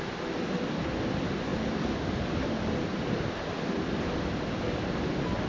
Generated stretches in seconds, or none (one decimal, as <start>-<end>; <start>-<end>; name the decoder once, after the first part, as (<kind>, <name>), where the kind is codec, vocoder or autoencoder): none